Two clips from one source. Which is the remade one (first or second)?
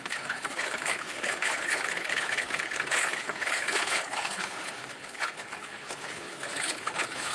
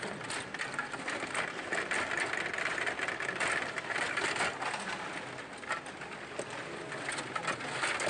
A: first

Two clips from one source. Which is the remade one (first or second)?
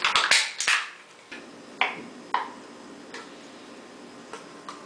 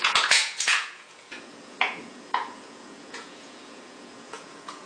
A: second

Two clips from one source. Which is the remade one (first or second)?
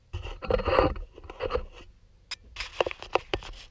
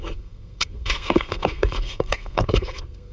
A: second